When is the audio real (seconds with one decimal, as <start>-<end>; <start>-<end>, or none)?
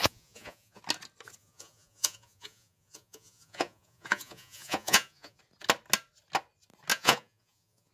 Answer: 0.8-1.4; 5.4-6.9